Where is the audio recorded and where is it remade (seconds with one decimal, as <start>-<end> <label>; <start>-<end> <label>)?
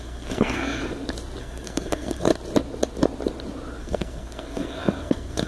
0.0-0.8 remade; 0.8-1.4 recorded; 1.4-2.3 remade; 2.3-3.8 recorded; 3.8-5.5 remade